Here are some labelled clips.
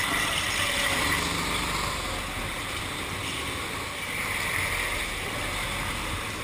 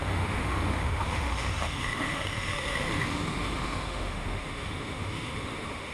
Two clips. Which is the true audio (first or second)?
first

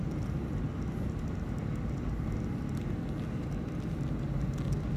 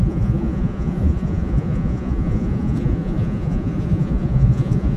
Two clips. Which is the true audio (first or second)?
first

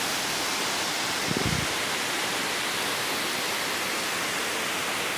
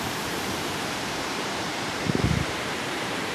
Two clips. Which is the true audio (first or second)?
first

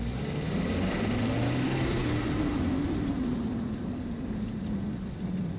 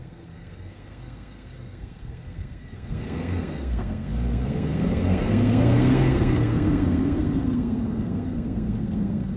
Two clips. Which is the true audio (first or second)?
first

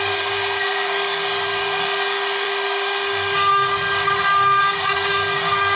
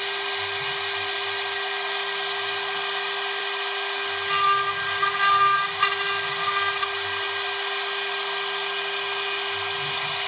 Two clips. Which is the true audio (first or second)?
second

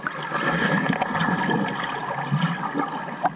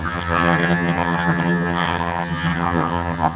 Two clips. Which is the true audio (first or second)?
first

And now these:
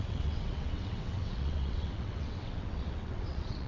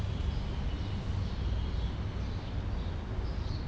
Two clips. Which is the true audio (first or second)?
second